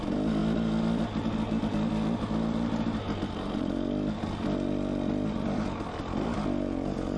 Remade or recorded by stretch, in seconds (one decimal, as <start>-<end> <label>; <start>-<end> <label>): 0.0-7.2 recorded